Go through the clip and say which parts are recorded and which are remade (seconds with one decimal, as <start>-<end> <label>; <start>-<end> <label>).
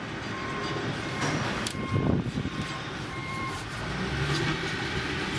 0.0-3.2 recorded; 3.2-3.7 remade; 3.7-4.5 recorded; 4.5-5.4 remade